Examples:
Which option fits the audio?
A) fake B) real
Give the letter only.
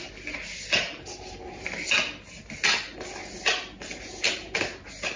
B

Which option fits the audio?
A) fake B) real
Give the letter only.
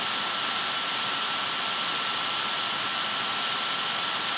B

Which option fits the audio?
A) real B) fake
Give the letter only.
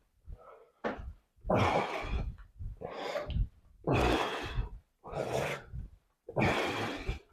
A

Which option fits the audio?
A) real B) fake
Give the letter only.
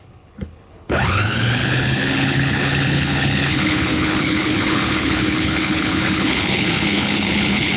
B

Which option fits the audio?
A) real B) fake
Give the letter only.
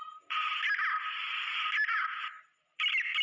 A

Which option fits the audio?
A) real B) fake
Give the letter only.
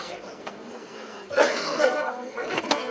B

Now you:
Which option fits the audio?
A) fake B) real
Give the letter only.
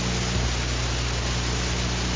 B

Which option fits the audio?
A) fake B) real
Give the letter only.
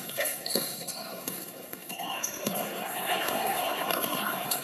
A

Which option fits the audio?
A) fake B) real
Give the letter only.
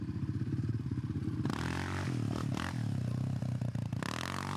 B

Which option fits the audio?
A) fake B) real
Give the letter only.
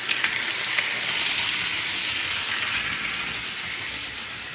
B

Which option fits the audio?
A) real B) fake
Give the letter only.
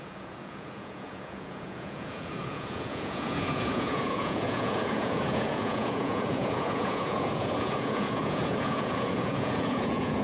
B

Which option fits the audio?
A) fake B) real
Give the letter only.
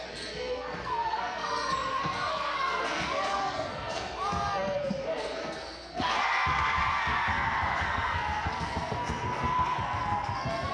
A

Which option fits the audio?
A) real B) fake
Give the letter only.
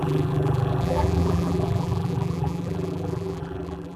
B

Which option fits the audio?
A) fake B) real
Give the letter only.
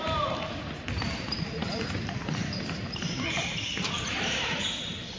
A